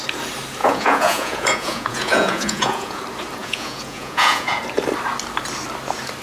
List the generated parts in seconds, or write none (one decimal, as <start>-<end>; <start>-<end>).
0.6-3.0; 3.4-4.6